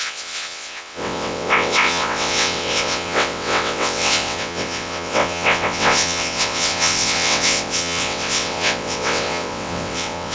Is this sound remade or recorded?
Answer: remade